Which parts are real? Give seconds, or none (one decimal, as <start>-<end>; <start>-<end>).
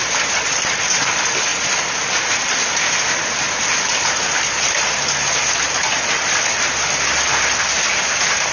0.0-8.5